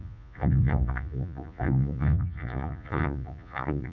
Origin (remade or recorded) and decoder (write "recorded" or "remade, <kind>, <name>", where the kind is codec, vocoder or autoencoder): remade, vocoder, Vocos